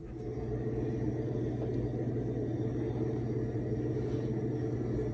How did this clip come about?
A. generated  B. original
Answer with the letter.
B